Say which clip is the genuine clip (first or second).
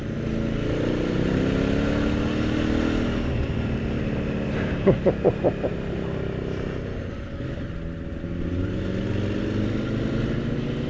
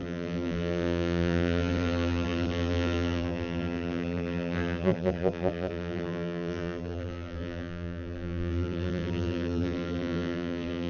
first